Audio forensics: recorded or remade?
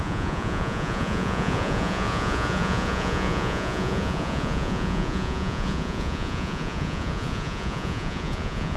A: remade